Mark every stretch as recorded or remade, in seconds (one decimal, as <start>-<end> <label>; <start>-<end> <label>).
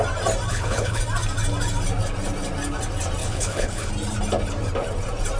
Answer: 0.0-0.5 recorded; 0.5-1.0 remade; 1.0-3.2 recorded; 3.2-3.9 remade; 3.9-5.4 recorded